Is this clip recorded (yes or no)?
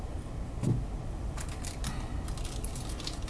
yes